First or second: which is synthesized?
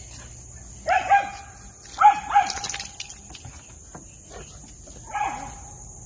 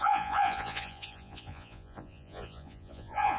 second